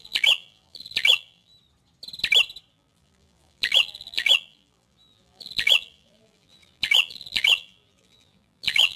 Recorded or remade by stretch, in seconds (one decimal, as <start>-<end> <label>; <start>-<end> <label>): 0.0-1.5 remade; 1.5-2.7 recorded; 2.7-9.0 remade